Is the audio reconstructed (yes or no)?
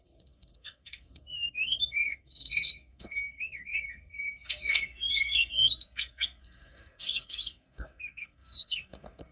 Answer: yes